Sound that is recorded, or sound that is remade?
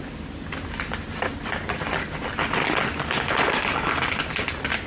recorded